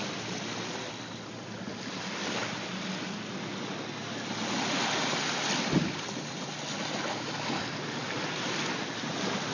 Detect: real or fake real